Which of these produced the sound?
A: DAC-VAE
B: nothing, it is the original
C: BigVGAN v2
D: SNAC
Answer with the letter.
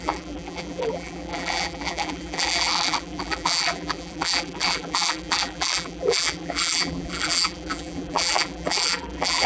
C